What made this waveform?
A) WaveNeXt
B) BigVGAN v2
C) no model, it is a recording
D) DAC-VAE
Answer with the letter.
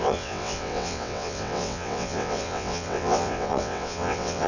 A